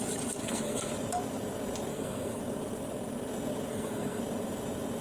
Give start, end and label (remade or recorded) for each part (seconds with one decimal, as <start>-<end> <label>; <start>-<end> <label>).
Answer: 0.0-0.4 recorded; 0.4-0.9 remade; 0.9-1.9 recorded; 1.9-2.4 remade; 2.4-3.7 recorded; 3.7-4.2 remade; 4.2-5.0 recorded